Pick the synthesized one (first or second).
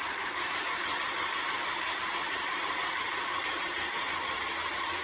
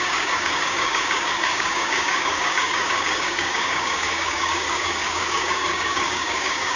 second